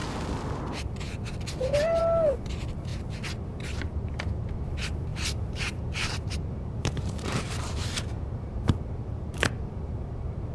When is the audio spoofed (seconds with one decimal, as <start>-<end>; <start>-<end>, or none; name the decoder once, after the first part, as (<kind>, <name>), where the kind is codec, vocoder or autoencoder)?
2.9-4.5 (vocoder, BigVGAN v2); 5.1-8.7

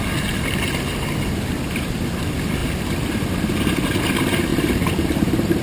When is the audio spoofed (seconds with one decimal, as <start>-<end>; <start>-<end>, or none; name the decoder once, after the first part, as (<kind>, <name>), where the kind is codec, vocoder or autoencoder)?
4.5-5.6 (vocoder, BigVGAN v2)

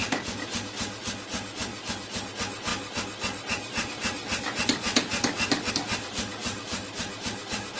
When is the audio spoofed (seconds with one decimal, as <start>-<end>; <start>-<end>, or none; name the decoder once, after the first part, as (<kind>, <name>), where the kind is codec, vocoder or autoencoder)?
0.0-0.6 (vocoder, BigVGAN v2); 1.7-2.3; 6.4-7.8

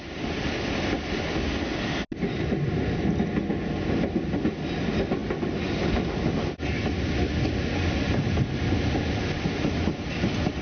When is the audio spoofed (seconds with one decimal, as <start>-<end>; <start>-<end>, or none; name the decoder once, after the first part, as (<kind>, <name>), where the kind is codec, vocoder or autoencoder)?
none

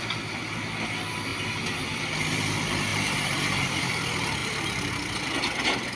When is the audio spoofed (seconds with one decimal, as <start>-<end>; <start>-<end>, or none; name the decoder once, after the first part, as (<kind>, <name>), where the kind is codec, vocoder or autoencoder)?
1.3-1.9 (vocoder, BigVGAN v2); 2.9-3.9; 4.4-4.9

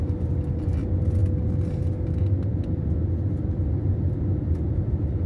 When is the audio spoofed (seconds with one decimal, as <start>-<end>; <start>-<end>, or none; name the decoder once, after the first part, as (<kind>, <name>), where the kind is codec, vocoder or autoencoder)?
0.0-1.2 (vocoder, BigVGAN v2); 4.4-5.3

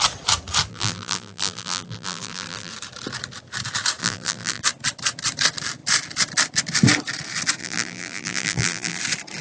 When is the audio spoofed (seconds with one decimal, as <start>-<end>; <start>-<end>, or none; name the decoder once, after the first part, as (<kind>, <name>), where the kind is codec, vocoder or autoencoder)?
0.7-2.7 (vocoder, BigVGAN v2); 4.0-4.6; 7.6-9.0